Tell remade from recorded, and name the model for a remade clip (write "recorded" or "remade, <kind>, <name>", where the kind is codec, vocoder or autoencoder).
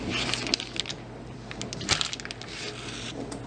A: recorded